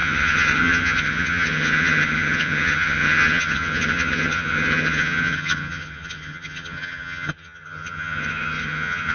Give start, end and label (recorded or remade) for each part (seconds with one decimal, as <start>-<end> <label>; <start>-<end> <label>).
0.0-9.1 remade